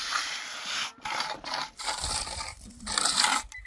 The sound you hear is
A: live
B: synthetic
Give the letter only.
A